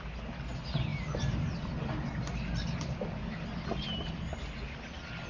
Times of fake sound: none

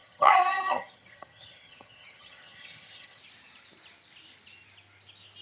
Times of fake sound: 0.0-3.2 (vocoder, HiFi-GAN)

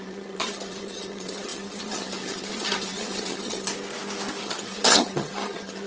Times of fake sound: 0.0-3.7 (vocoder, HiFi-GAN); 4.4-5.9

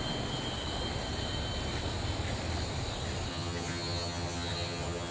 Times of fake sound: 3.3-5.1 (vocoder, HiFi-GAN)

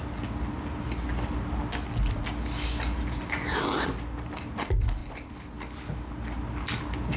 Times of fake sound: none

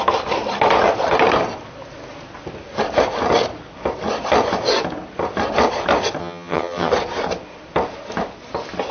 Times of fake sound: 6.2-6.9 (vocoder, HiFi-GAN)

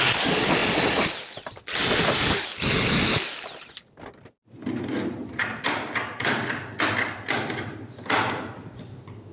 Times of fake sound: none